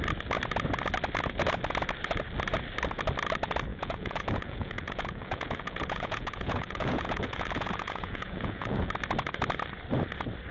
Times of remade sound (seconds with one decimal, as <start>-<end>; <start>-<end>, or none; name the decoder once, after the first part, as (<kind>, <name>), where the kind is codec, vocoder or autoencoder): 3.7-8.9 (vocoder, Vocos)